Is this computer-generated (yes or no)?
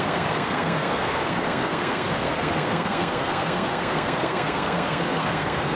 yes